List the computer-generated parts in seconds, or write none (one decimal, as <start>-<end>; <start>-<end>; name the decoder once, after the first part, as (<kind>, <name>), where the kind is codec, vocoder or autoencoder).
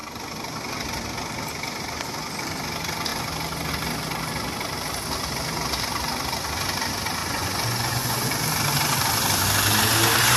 7.2-8.3 (vocoder, Vocos)